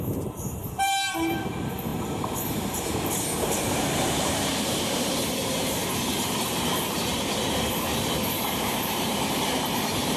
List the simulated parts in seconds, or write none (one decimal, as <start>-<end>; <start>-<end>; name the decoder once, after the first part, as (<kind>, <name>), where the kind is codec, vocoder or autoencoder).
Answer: 0.0-0.6 (vocoder, BigVGAN v2); 1.1-5.8; 8.3-10.2